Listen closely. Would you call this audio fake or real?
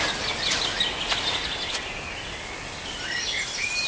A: real